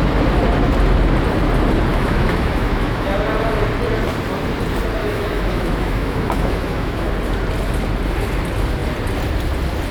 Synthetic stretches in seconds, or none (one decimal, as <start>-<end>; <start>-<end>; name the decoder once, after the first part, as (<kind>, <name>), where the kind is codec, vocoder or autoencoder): 1.9-3.1 (autoencoder, DAC-VAE); 5.0-7.1